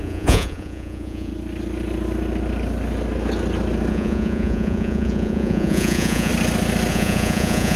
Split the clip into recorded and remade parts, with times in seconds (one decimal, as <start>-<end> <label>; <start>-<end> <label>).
0.0-1.3 remade; 1.3-3.9 recorded; 3.9-6.3 remade; 6.3-6.9 recorded; 6.9-7.8 remade